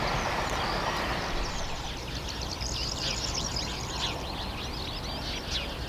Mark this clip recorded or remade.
recorded